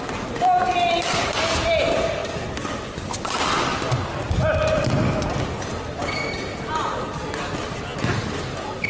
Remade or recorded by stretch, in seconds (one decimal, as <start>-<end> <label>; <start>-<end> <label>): 0.0-8.9 recorded